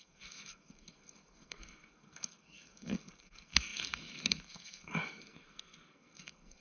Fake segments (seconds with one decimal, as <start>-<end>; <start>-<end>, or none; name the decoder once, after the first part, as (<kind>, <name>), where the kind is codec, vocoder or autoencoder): 0.0-6.6 (codec, SNAC)

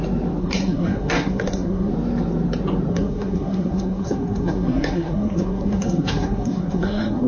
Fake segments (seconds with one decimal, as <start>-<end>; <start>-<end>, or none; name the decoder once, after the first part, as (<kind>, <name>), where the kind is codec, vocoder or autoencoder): 0.4-1.9 (codec, SNAC); 2.9-7.3

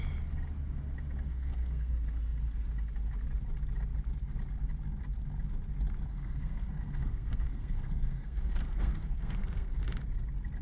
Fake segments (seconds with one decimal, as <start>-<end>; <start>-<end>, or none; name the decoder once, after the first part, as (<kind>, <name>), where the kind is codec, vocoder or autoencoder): 1.3-1.9 (codec, SNAC); 6.1-9.8

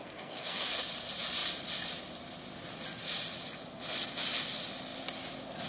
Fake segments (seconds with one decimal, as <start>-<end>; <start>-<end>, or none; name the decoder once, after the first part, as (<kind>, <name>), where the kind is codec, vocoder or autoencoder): 0.0-0.7 (codec, SNAC)

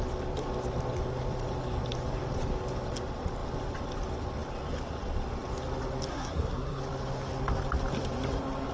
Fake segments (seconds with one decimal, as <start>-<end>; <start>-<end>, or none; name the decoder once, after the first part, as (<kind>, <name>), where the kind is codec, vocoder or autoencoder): 6.1-6.8 (codec, SNAC)

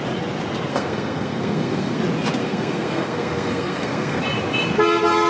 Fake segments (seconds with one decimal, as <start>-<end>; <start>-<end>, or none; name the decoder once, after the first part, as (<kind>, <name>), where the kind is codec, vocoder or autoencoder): 0.7-2.0 (codec, SNAC); 2.4-4.2

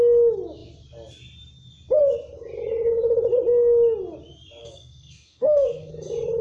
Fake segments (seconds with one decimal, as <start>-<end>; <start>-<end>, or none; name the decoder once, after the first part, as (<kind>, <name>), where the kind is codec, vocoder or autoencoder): 4.6-5.9 (codec, SNAC)

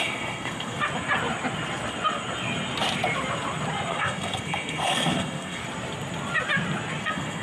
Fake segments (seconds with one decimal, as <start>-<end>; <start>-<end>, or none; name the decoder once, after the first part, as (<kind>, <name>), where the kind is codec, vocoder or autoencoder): 0.0-0.8 (codec, SNAC); 3.9-5.6; 7.0-7.4